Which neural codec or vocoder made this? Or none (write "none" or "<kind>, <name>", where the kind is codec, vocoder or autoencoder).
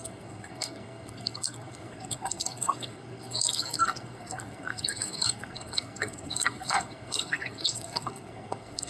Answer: codec, SNAC